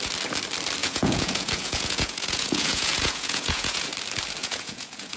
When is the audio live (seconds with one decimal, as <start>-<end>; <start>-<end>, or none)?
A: 0.0-0.8; 3.9-4.4